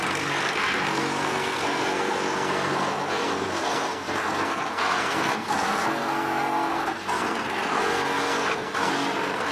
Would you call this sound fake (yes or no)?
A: yes